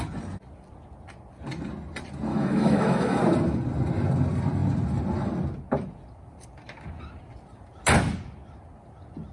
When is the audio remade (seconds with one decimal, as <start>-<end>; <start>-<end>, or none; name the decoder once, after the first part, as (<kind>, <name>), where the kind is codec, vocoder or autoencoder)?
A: 2.3-3.2 (autoencoder, DAC-VAE)